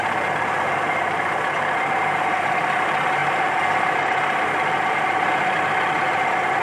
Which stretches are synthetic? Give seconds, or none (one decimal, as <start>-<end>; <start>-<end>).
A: none